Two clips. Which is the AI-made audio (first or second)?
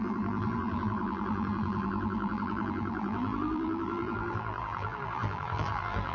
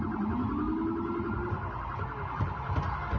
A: first